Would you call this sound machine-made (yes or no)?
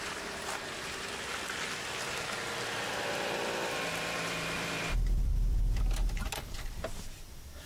yes